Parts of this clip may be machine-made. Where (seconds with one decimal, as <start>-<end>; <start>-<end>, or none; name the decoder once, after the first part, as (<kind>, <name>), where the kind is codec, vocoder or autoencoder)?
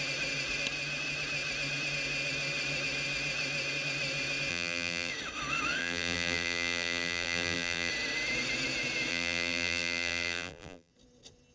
4.5-5.1 (vocoder, BigVGAN v2); 5.8-7.9; 9.1-10.9